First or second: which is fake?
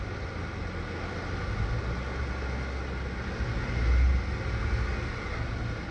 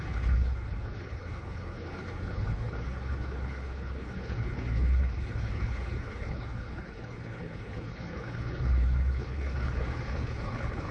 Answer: second